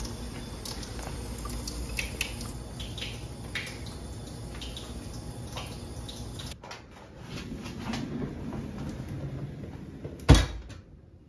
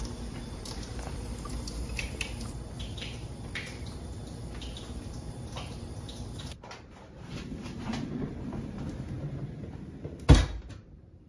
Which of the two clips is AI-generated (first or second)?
second